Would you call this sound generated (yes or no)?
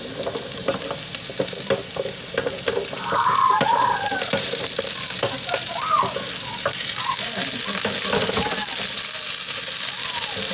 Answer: no